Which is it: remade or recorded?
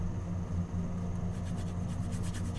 recorded